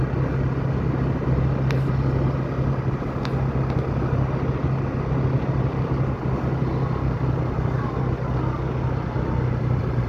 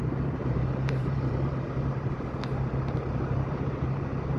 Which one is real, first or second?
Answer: first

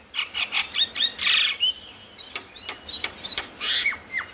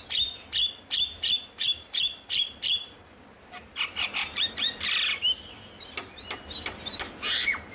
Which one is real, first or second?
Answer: second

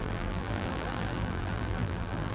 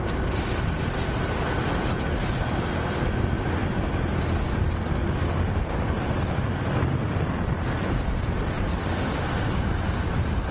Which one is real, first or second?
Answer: second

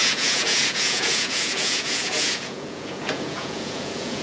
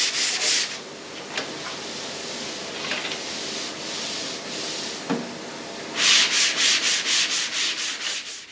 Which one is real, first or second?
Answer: second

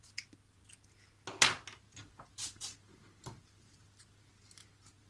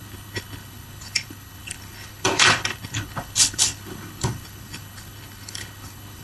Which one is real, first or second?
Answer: first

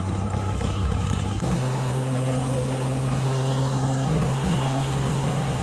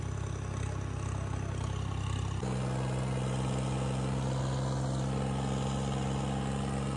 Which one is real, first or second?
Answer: second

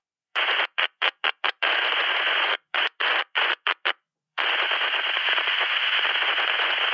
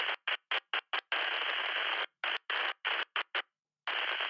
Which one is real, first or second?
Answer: second